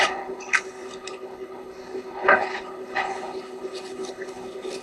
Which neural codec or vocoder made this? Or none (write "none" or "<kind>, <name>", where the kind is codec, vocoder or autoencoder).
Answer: codec, HILCodec